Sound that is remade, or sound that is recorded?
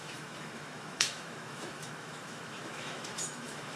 remade